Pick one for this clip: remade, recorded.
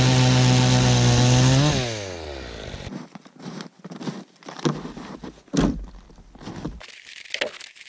recorded